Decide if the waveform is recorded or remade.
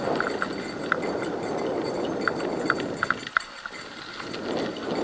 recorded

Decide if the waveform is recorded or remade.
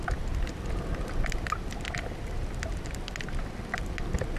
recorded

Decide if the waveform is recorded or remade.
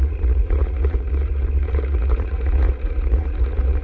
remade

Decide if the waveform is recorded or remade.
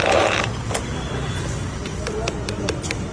recorded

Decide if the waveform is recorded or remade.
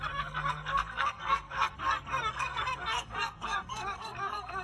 remade